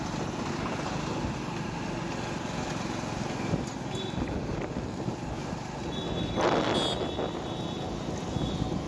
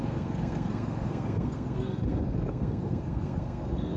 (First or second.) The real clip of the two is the first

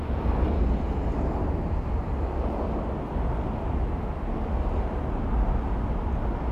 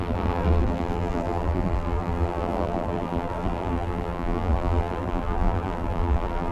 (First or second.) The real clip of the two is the first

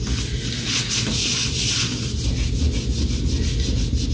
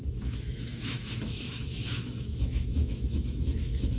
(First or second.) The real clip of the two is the first